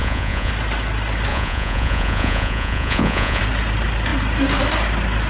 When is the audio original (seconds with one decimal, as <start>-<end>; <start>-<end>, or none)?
0.5-1.3; 3.4-5.3